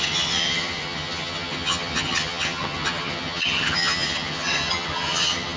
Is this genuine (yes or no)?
no